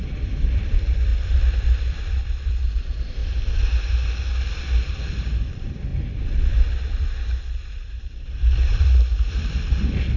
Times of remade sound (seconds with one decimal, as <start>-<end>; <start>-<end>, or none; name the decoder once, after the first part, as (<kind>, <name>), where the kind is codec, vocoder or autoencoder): 0.0-3.2 (vocoder, BigVGAN v2); 4.5-5.9; 8.1-10.2